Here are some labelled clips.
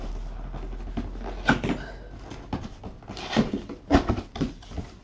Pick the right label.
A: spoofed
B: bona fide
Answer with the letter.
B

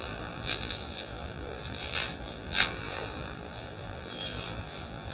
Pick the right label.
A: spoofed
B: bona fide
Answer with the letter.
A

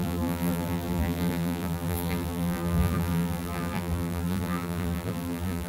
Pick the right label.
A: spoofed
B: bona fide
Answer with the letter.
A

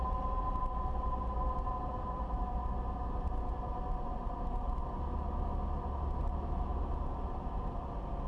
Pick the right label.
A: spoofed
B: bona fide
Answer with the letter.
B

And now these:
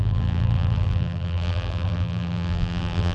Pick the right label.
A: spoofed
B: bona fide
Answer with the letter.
A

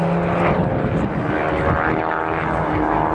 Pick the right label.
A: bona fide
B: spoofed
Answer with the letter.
A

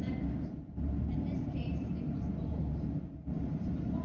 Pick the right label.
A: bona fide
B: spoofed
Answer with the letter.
B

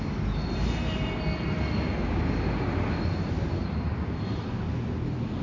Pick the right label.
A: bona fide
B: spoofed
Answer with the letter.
A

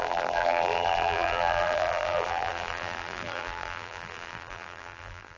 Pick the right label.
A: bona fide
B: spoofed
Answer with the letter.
B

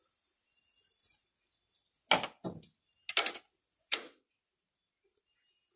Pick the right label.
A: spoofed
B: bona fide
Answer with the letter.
B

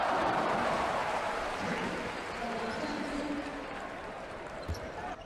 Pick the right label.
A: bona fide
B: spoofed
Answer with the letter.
B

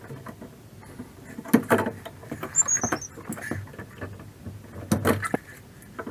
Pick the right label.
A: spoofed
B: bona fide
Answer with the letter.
B